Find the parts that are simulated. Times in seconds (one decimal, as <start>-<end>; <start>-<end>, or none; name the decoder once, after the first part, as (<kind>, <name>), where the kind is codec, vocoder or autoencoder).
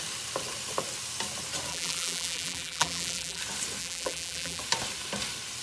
1.7-3.4 (vocoder, BigVGAN v2); 3.8-4.6